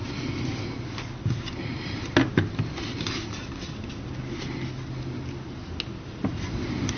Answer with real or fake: real